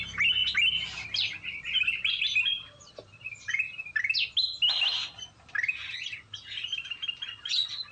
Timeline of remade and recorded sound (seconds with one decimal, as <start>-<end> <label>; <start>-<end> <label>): 0.0-0.4 recorded; 0.4-3.5 remade; 3.5-7.9 recorded